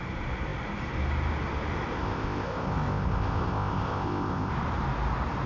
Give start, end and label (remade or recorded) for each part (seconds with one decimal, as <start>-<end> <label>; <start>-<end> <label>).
0.0-2.0 recorded; 2.0-4.5 remade; 4.5-5.5 recorded